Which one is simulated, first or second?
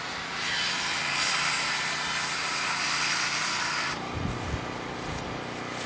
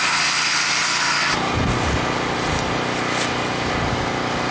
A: first